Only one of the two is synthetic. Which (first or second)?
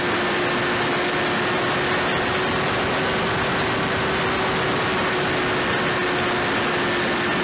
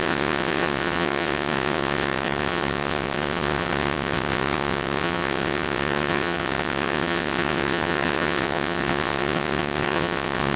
second